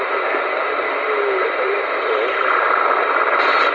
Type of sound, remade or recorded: recorded